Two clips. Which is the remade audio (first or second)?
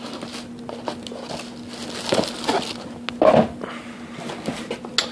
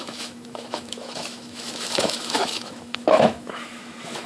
second